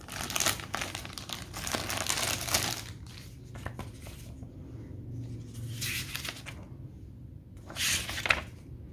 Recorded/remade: recorded